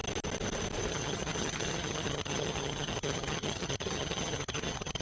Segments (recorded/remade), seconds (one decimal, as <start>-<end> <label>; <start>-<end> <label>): 0.0-0.9 recorded; 0.9-5.0 remade